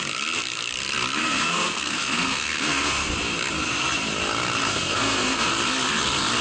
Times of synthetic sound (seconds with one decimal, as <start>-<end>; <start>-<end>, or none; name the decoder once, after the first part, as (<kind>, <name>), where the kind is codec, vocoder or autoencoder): 1.2-3.1 (codec, SNAC); 4.7-5.5